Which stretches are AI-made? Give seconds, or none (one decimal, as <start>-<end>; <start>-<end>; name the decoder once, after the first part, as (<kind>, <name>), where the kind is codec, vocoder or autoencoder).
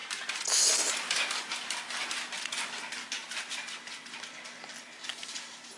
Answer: none